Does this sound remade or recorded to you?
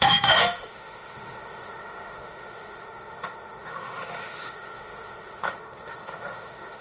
remade